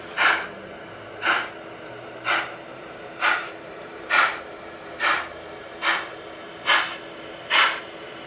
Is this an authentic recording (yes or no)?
no